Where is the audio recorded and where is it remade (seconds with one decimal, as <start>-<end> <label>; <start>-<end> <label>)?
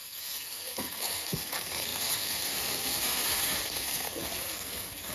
0.0-5.1 remade